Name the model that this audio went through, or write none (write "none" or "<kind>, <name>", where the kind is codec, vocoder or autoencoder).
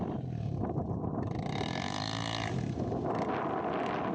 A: none